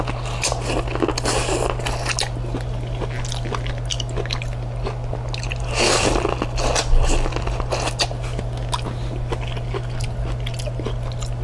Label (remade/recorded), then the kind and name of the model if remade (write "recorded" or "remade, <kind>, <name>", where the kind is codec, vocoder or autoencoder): recorded